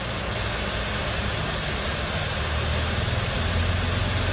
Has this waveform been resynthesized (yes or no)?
no